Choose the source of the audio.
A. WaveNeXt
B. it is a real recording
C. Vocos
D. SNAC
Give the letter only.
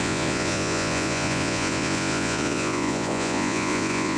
C